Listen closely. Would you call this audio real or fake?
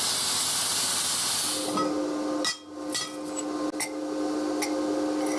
real